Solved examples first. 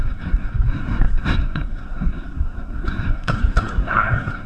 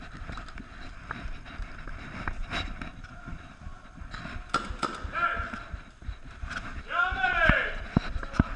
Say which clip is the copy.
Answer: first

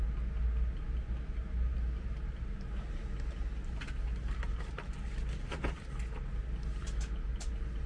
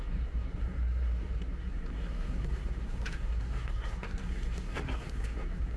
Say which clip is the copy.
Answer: second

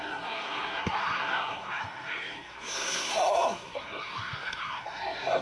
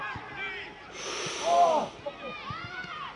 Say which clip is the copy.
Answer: first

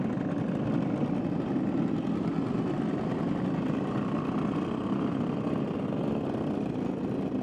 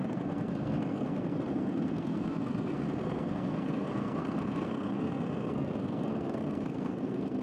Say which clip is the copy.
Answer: second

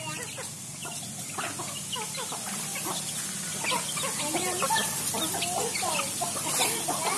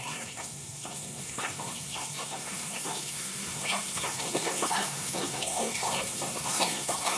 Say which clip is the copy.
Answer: second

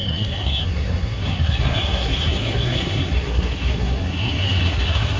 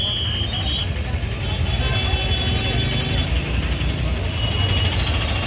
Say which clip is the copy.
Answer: first